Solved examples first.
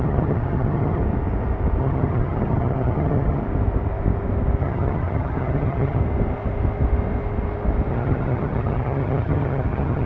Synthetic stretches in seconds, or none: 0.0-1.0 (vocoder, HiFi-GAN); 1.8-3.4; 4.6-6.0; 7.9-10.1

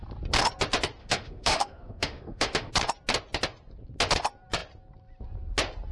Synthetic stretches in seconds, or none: 1.0-2.7 (autoencoder, DAC-VAE)

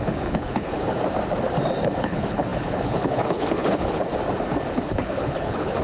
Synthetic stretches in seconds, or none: 0.0-0.9 (codec, HILCodec); 2.0-4.1; 4.7-5.8

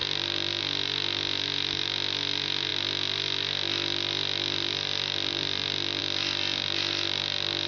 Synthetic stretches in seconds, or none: none

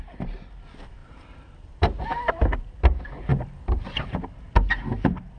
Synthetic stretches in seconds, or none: 1.0-2.3 (vocoder, BigVGAN v2); 3.3-4.1

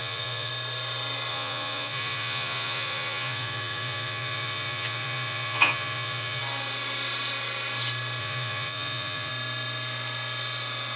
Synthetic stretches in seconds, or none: 0.0-0.5 (vocoder, Vocos); 1.3-6.4; 8.2-9.3